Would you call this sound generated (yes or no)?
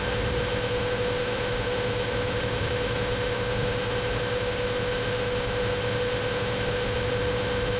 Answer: yes